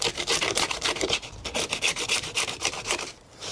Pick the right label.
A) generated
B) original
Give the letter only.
A